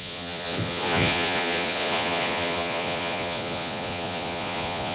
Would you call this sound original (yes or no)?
no